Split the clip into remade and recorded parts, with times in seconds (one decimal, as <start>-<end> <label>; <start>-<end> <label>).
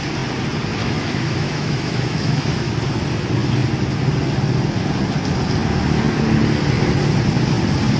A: 0.0-0.8 recorded; 0.8-2.7 remade; 2.7-8.0 recorded